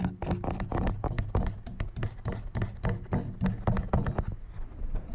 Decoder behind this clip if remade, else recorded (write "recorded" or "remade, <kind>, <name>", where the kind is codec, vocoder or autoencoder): recorded